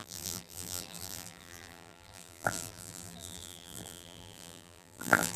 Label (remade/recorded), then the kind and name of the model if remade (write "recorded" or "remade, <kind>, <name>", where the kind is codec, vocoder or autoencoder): remade, vocoder, BigVGAN v2